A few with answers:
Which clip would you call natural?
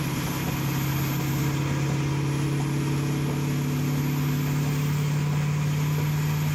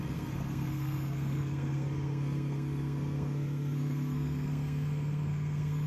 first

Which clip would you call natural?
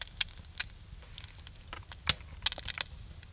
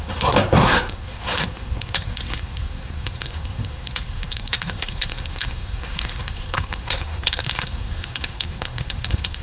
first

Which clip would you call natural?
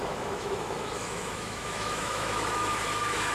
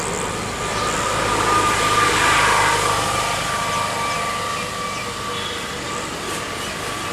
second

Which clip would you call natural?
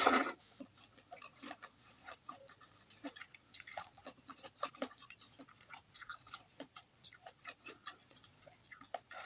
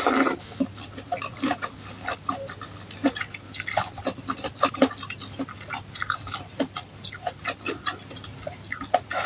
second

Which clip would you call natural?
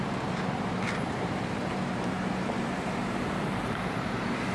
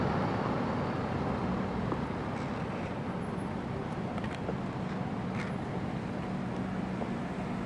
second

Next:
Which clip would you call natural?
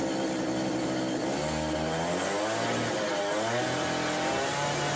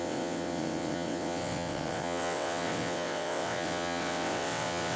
first